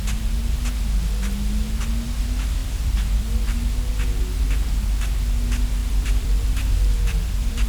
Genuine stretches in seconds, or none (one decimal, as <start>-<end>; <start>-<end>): 0.0-2.6; 3.4-5.8